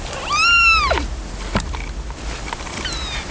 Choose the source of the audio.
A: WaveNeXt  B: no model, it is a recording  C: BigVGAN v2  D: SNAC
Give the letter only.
B